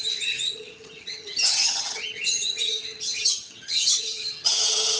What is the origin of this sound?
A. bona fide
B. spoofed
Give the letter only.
B